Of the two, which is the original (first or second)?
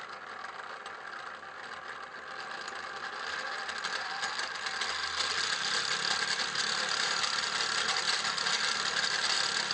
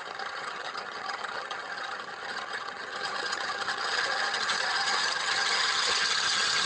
first